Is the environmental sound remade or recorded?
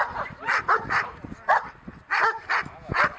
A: recorded